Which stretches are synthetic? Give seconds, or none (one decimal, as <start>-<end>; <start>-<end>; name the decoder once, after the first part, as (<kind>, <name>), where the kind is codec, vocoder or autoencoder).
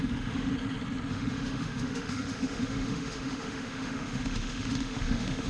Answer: 0.0-0.5 (autoencoder, DAC-VAE); 1.1-5.5